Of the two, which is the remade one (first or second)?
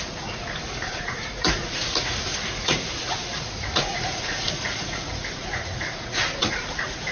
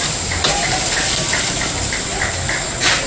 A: first